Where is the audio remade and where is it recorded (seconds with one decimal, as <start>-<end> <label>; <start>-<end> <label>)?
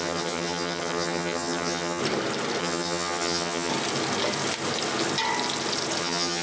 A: 0.0-2.0 remade; 2.0-2.6 recorded; 2.6-3.7 remade; 3.7-6.0 recorded; 6.0-6.4 remade